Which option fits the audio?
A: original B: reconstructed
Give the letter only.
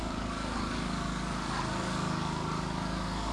B